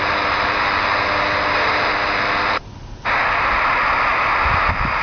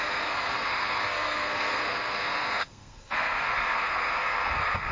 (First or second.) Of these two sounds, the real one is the first